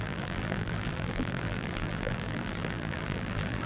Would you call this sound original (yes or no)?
no